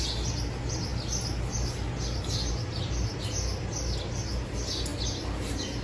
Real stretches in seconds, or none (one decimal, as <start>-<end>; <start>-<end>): 0.0-5.8